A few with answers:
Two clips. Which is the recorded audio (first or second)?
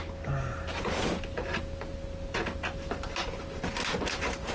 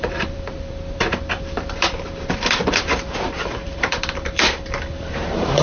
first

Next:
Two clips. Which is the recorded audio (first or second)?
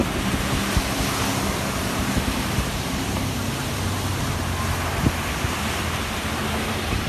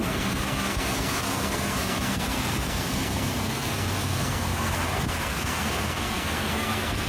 first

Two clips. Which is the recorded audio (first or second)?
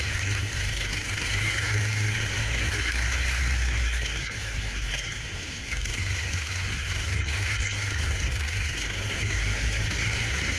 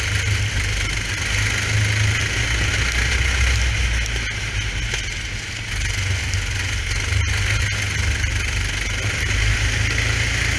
second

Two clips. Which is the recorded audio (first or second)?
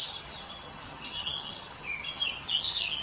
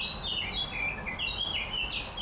second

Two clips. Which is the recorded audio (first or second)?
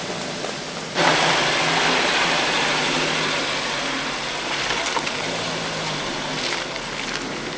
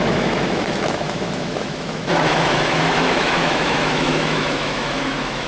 first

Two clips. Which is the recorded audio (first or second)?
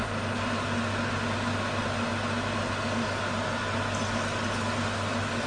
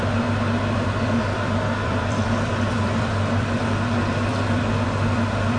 first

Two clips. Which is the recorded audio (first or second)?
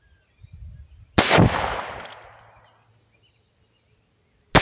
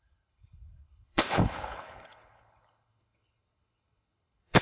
first